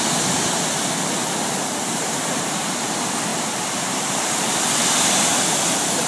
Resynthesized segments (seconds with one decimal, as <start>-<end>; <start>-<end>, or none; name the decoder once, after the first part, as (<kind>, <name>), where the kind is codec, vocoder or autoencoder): 1.6-2.8 (vocoder, BigVGAN v2); 3.3-4.0